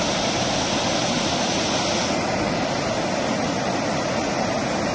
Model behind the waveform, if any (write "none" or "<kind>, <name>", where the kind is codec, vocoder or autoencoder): none